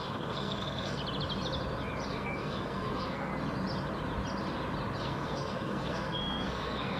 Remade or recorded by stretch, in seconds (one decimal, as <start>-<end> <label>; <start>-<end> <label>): 0.0-1.0 remade; 1.0-2.1 recorded; 2.1-3.3 remade; 3.3-5.0 recorded; 5.0-7.0 remade